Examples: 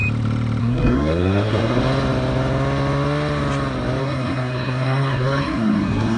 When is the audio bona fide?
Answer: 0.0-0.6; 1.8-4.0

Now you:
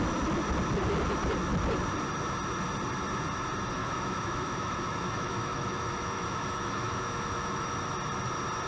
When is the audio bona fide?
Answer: 0.0-3.8; 7.8-8.7

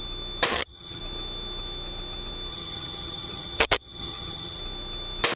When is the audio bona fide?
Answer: 0.0-0.5; 1.0-2.5; 4.6-5.4

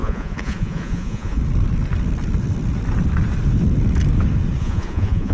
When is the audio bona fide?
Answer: 1.4-4.6

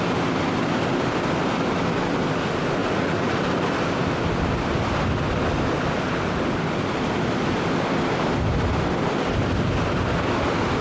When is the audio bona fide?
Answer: 0.0-2.8; 3.4-10.8

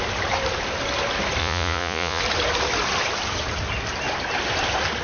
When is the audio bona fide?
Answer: 0.0-1.4; 2.2-5.0

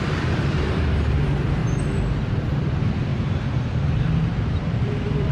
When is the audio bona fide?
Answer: 1.6-2.7

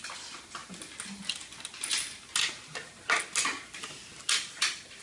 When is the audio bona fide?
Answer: 0.0-5.0